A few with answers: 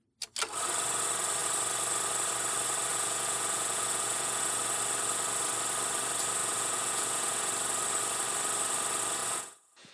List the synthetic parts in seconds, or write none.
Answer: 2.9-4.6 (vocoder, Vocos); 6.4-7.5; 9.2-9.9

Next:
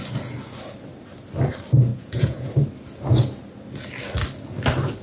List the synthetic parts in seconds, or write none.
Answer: 1.9-2.5 (vocoder, Vocos)

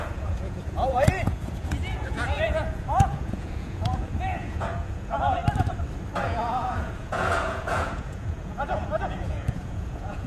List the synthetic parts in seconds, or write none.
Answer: 0.0-5.4 (vocoder, Vocos); 6.2-10.3

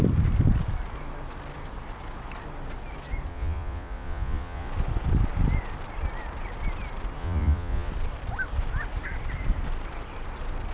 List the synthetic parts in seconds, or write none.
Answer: 3.3-4.7 (vocoder, Vocos); 7.2-7.9

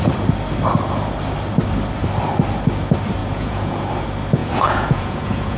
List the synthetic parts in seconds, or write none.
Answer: 3.2-3.9 (vocoder, Vocos); 4.4-5.6

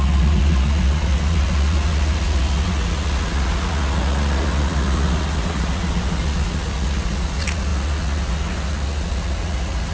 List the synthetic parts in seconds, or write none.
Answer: 0.0-9.9 (vocoder, Vocos)

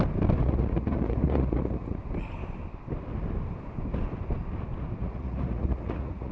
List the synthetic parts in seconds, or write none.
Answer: 0.4-2.0 (vocoder, Vocos); 5.0-6.3